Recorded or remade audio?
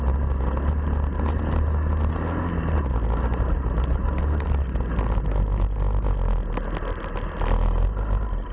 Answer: recorded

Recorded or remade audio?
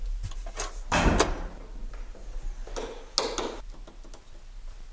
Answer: recorded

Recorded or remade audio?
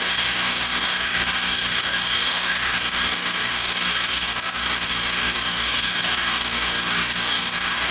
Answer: remade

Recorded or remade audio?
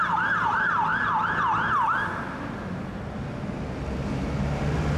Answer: recorded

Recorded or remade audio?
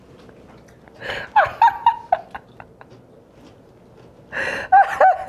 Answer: recorded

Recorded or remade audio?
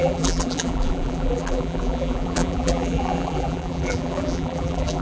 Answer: remade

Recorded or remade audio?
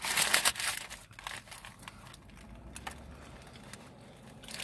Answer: recorded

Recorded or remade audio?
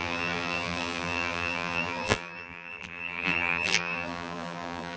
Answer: remade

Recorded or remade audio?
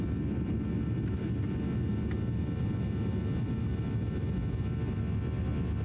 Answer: recorded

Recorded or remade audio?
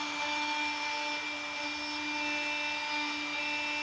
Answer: recorded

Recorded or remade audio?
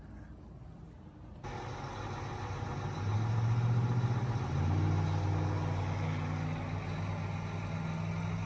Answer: recorded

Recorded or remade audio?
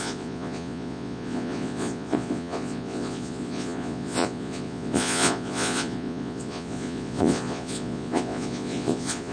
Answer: remade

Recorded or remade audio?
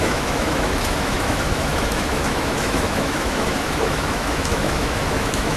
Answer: remade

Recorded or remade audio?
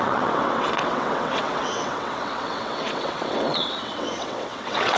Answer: remade